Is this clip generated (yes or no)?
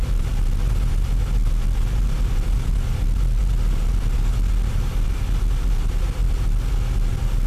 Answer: no